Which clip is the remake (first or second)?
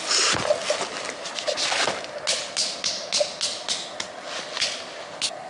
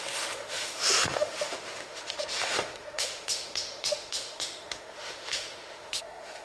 second